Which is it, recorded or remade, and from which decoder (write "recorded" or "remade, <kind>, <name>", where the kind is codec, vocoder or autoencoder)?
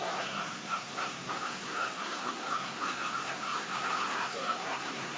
remade, codec, SNAC